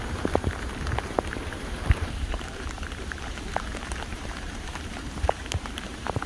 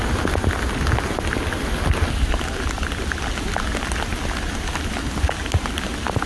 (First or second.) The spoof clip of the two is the first